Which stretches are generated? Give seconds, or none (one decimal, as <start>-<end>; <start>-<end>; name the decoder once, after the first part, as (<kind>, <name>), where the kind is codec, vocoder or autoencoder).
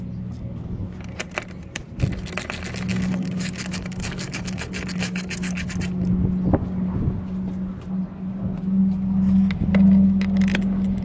2.9-5.7 (codec, DAC)